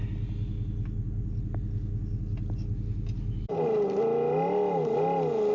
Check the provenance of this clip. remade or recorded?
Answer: recorded